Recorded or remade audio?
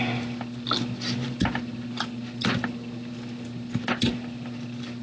recorded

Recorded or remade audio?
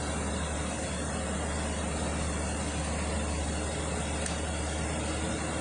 recorded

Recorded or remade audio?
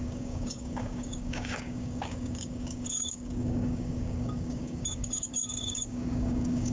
remade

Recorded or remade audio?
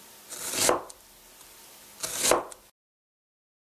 recorded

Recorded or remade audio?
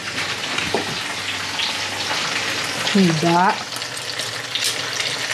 recorded